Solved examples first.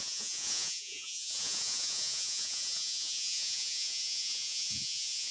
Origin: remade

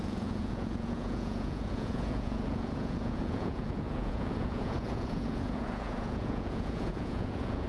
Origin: remade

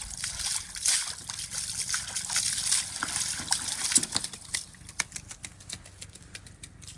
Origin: recorded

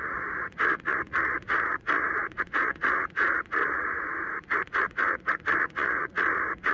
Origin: remade